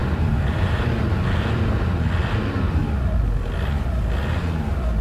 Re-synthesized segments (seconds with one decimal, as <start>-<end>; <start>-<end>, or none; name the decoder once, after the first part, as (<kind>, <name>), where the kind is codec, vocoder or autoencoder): 0.0-0.9 (vocoder, BigVGAN v2)